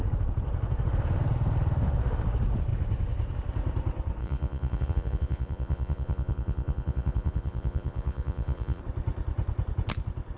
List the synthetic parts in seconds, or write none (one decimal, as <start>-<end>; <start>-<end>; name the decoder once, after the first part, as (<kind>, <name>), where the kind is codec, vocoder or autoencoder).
4.2-8.8 (vocoder, Vocos)